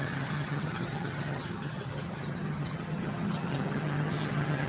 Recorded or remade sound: remade